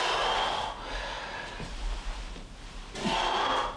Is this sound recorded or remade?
recorded